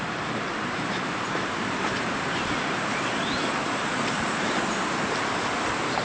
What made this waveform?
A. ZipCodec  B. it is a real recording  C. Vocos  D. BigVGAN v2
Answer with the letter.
D